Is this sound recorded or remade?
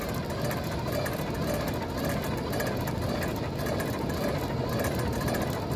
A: recorded